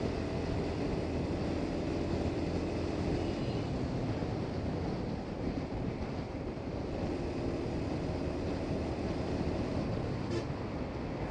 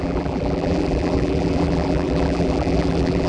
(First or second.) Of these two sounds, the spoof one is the second